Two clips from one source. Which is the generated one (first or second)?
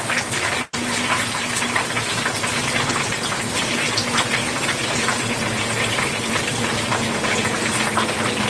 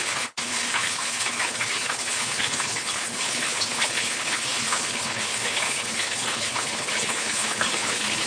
second